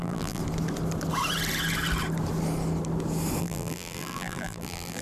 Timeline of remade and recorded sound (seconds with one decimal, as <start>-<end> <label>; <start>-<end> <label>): 0.0-0.4 remade; 0.4-3.4 recorded; 3.4-5.0 remade